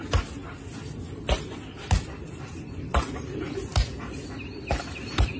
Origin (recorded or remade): recorded